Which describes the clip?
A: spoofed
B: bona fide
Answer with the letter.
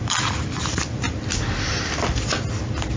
B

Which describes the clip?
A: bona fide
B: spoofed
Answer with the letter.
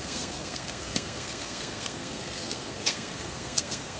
B